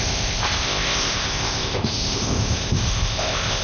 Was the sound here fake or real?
fake